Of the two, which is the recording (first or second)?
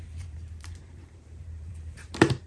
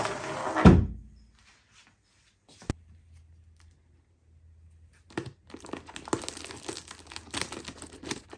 second